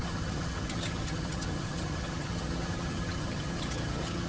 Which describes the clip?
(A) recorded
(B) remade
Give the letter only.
B